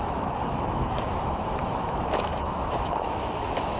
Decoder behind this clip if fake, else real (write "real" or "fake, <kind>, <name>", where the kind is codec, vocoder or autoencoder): fake, autoencoder, DAC-VAE